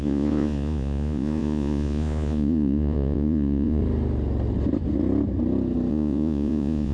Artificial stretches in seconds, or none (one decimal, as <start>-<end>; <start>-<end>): 0.0-3.8; 5.9-6.9